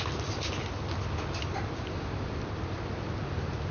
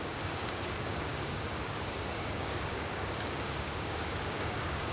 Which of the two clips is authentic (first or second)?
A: first